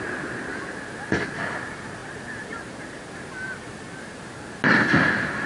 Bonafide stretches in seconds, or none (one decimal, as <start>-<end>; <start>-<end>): 0.0-5.5